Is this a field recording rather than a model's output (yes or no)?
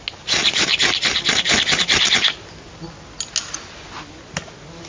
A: yes